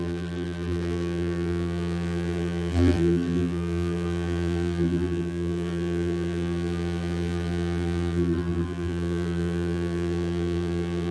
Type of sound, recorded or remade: remade